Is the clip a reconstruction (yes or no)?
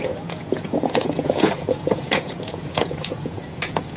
yes